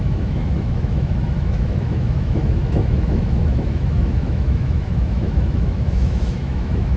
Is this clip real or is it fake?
fake